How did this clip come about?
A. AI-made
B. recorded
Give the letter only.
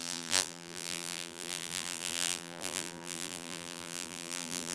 A